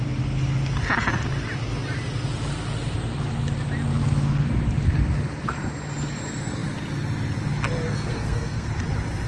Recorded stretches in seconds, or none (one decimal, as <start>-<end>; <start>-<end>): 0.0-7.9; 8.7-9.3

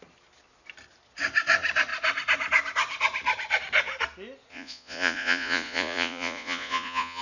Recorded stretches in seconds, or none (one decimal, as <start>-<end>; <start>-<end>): 0.0-4.5

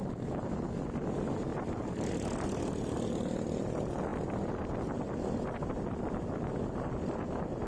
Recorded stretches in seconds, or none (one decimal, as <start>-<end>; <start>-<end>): 0.0-7.7